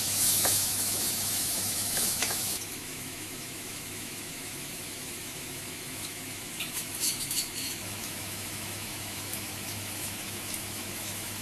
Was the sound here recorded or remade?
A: remade